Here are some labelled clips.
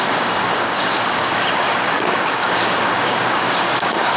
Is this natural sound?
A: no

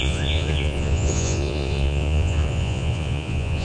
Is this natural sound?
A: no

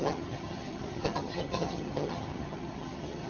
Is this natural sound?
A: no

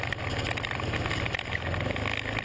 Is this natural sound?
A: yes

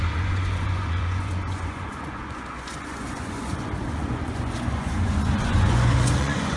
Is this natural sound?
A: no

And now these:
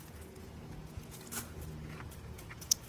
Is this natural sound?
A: no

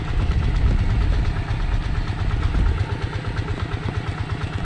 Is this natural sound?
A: yes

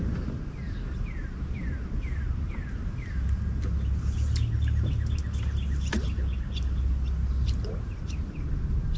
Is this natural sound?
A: yes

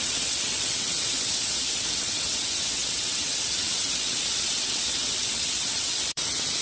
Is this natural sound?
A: no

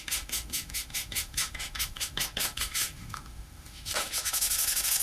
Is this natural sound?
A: no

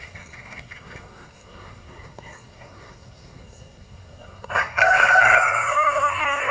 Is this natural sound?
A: no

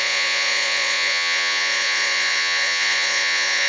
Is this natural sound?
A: no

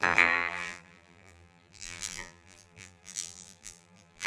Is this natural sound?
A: no